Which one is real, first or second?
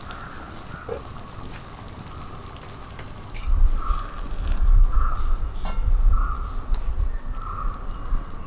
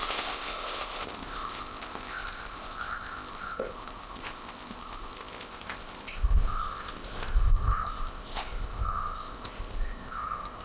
first